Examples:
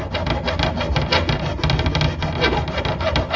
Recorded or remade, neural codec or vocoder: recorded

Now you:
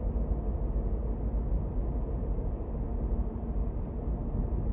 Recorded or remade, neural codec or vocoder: recorded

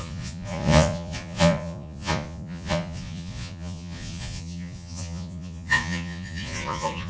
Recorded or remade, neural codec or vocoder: remade, vocoder, Vocos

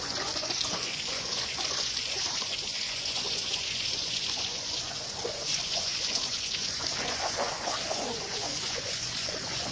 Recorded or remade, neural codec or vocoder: remade, vocoder, Vocos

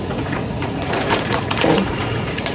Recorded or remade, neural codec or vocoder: remade, vocoder, Vocos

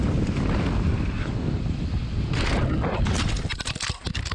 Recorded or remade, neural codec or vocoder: recorded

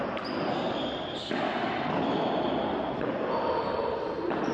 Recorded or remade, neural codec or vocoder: recorded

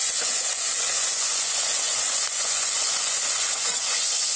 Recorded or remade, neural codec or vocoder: remade, vocoder, Vocos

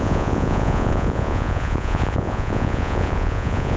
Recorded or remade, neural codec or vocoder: remade, vocoder, Vocos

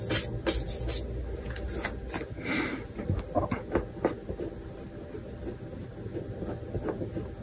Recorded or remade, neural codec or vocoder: recorded